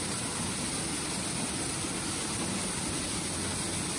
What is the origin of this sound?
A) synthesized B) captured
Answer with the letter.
B